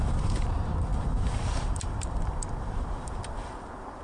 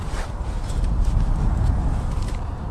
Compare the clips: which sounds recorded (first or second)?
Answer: second